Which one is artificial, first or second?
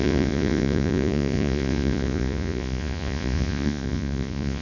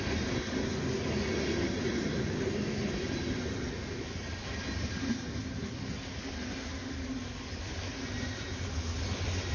first